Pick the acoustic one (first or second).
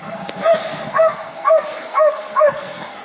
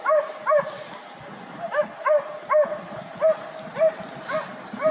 second